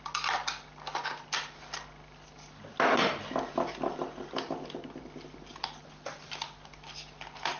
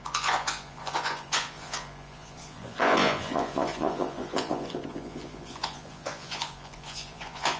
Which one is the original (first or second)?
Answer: first